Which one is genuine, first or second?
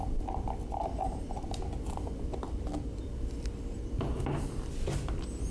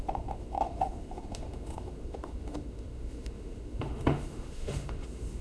first